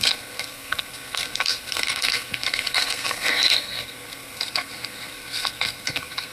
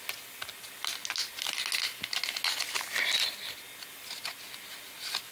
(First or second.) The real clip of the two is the second